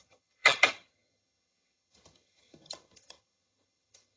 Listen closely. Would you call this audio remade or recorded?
remade